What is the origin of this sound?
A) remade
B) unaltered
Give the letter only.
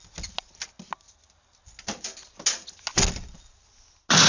B